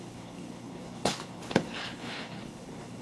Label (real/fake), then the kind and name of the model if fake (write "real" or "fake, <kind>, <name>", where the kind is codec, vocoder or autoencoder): fake, codec, HILCodec